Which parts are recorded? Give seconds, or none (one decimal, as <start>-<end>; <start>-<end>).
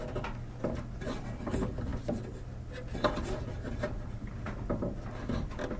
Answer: 0.0-5.8